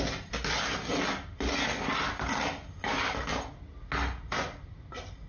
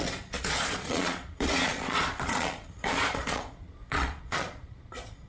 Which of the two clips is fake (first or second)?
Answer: second